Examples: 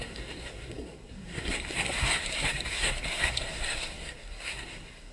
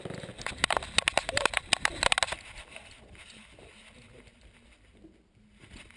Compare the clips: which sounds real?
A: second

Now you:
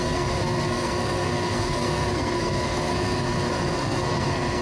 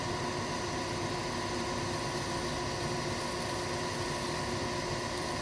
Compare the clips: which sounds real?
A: second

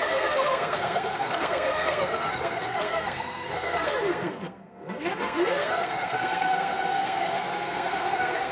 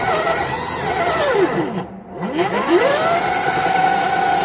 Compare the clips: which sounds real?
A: second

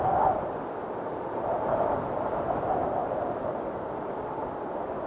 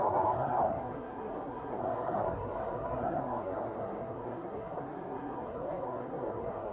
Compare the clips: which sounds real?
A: first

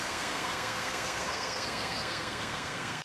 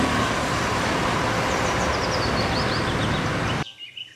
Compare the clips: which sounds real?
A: second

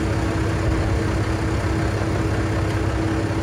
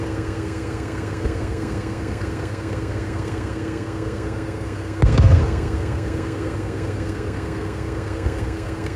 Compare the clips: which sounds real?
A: first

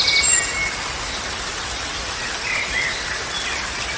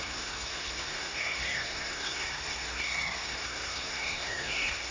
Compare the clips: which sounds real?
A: first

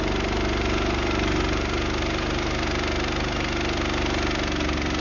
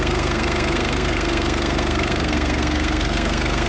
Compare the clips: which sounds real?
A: first